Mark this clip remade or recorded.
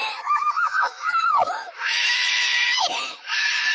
remade